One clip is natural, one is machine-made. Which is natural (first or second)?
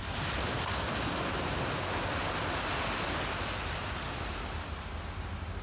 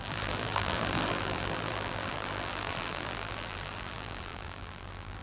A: first